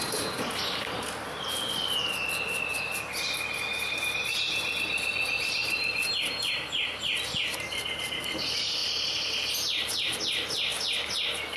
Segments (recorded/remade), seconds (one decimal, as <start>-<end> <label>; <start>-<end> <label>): 0.0-11.6 recorded